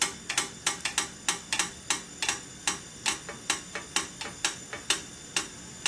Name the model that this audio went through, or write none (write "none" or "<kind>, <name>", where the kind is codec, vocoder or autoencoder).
none